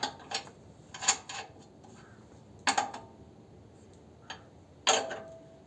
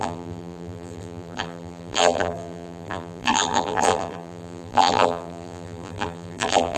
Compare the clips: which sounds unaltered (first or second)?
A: first